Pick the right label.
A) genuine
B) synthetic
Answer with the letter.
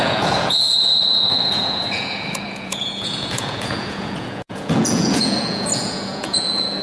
B